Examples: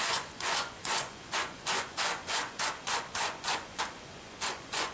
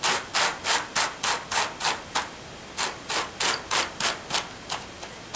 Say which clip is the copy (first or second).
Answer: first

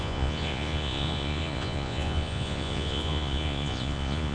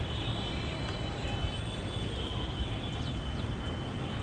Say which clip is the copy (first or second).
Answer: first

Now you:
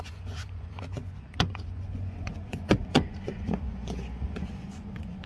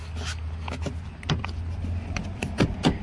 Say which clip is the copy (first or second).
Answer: first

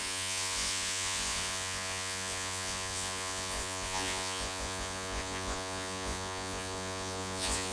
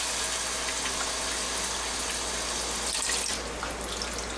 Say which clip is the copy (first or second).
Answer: first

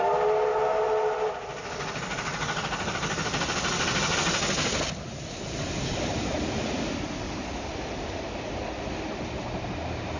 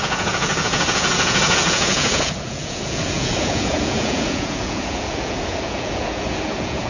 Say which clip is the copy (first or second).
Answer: second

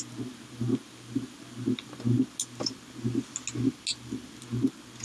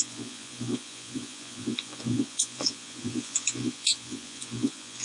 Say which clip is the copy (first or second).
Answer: second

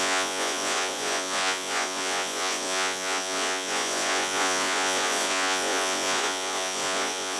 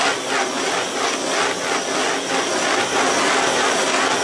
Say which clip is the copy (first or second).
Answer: first